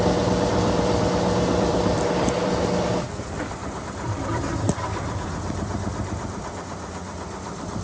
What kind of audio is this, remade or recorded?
remade